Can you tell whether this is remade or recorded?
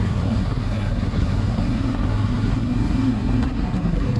remade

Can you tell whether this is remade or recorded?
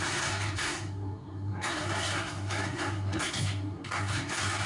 remade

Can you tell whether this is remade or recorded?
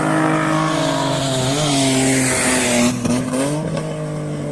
recorded